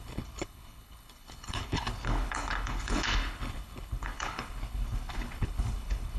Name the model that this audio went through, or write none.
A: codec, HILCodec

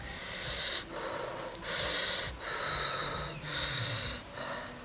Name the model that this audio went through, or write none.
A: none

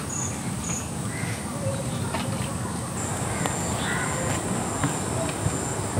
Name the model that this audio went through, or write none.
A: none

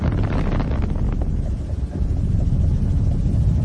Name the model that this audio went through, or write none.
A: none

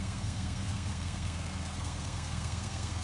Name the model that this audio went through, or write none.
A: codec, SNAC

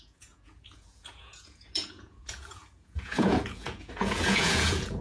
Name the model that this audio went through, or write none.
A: vocoder, Vocos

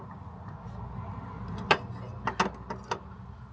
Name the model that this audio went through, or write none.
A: none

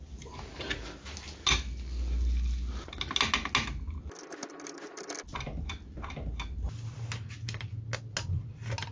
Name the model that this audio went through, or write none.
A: none